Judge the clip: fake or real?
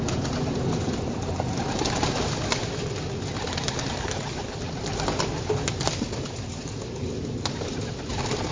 real